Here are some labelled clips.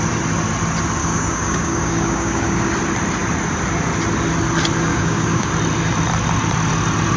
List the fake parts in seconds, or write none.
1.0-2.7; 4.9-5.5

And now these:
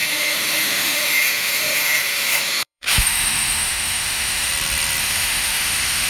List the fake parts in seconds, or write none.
0.0-4.5; 5.0-6.1

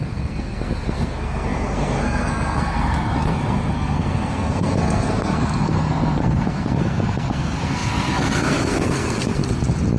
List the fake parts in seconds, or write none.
0.0-9.4

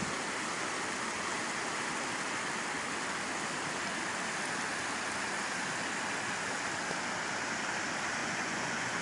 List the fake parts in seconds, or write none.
8.2-9.0